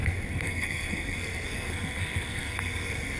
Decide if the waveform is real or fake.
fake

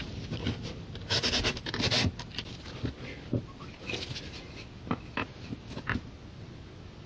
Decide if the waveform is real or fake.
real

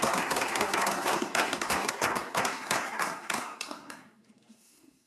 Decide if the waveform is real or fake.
fake